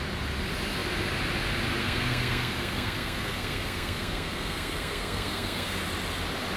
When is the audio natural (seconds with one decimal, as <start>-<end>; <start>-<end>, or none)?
0.0-1.8; 5.8-6.6